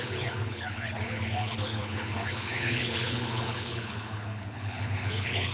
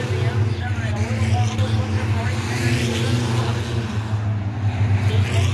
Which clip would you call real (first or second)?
second